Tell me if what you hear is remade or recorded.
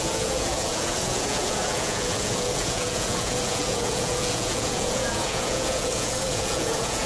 remade